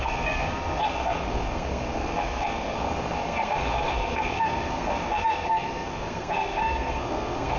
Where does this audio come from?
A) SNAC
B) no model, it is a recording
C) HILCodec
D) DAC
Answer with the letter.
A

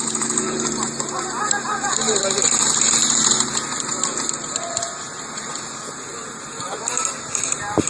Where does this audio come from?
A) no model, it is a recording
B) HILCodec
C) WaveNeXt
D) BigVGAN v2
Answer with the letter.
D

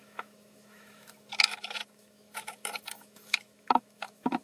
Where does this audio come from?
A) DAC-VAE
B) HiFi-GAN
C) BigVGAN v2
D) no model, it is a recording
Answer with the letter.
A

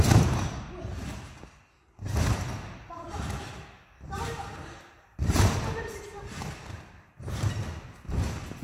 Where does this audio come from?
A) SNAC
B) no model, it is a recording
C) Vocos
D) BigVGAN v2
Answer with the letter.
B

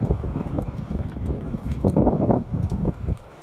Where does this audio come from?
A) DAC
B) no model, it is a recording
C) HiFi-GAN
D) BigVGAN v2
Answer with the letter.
A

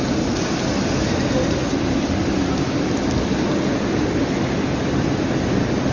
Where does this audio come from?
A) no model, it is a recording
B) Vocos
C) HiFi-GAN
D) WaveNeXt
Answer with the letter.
A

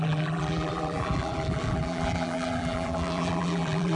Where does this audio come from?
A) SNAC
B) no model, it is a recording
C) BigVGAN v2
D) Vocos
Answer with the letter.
C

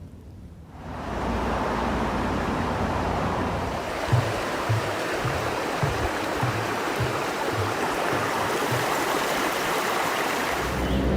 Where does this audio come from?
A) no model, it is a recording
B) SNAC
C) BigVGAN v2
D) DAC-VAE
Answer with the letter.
C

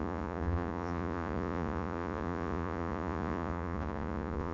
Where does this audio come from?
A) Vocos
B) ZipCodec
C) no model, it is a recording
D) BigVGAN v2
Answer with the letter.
A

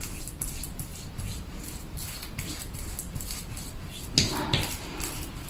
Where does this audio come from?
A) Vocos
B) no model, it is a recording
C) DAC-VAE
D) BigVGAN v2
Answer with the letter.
B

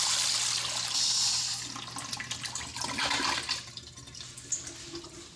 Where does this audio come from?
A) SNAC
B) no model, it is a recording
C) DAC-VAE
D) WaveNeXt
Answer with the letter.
B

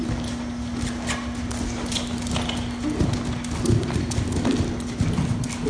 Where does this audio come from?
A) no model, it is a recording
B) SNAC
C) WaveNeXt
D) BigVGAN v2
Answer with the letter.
A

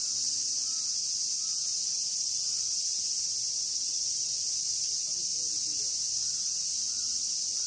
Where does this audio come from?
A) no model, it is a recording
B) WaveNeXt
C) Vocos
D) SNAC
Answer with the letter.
A